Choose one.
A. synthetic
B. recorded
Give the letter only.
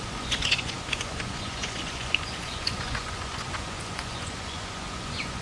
A